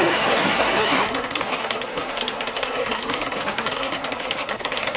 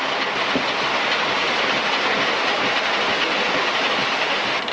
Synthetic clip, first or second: first